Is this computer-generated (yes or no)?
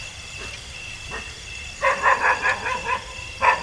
yes